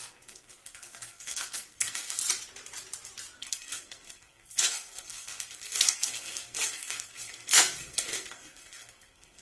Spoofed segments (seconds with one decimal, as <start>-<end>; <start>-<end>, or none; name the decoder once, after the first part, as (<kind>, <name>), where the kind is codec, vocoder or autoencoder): 0.0-2.2 (codec, SNAC); 3.4-9.4